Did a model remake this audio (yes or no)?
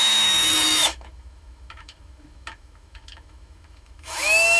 yes